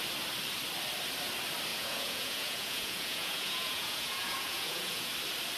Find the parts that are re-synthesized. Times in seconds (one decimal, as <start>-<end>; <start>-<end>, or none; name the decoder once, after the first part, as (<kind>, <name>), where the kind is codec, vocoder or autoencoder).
1.7-5.1 (vocoder, Vocos)